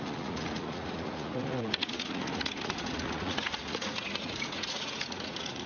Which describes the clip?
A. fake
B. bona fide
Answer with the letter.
A